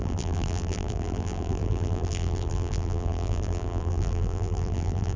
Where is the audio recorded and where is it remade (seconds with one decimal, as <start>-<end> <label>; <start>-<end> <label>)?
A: 0.0-5.2 remade